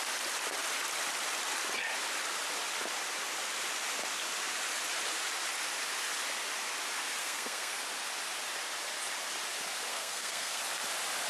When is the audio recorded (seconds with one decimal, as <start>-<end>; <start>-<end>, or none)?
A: 0.0-7.2; 7.8-9.9; 10.6-11.3